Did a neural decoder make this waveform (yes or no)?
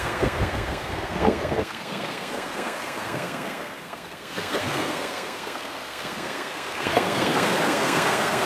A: yes